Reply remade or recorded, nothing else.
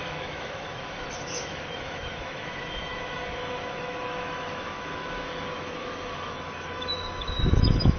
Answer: remade